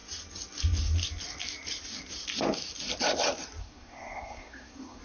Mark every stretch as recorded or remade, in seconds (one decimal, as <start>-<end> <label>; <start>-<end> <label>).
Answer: 0.0-3.6 recorded; 3.6-5.0 remade